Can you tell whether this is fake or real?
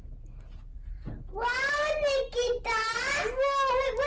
real